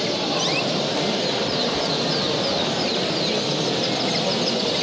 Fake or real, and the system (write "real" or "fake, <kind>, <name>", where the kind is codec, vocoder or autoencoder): real